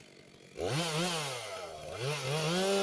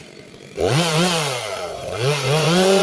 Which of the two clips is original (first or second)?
first